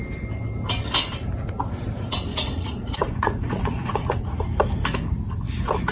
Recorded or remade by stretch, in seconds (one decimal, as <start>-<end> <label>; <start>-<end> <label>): 0.0-2.3 recorded; 2.3-4.4 remade; 4.4-5.9 recorded